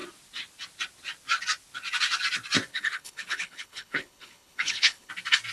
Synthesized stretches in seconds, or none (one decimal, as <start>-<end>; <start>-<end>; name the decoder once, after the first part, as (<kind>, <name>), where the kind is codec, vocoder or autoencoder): 2.7-5.1 (codec, HILCodec)